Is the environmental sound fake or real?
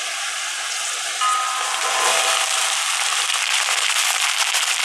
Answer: real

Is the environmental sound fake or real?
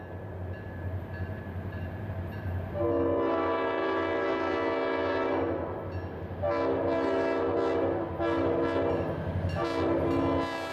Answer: real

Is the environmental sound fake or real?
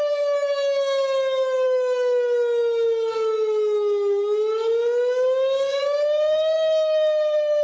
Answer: fake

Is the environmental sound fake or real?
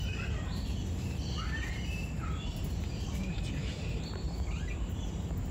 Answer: fake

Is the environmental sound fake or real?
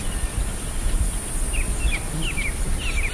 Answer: real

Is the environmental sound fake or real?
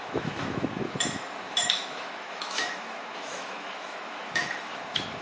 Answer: fake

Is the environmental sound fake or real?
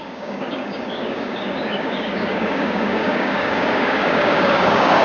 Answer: fake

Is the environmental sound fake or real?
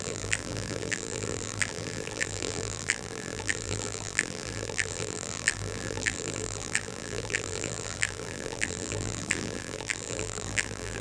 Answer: fake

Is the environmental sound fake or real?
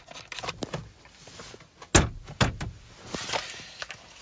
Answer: real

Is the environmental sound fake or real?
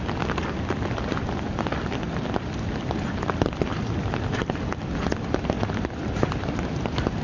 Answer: real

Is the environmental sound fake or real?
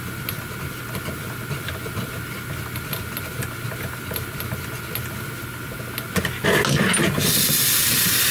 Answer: real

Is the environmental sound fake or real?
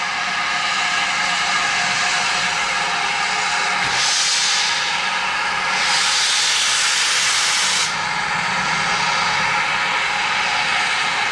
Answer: real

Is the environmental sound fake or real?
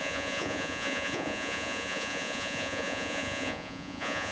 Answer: fake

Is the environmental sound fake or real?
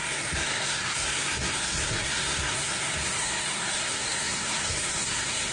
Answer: fake